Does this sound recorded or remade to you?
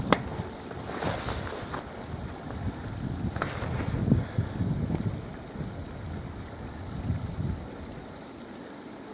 recorded